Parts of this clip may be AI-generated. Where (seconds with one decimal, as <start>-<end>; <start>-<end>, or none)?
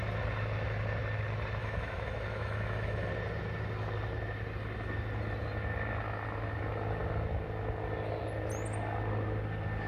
1.6-3.1